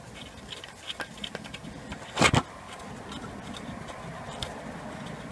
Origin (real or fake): real